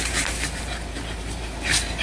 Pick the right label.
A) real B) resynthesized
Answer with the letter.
B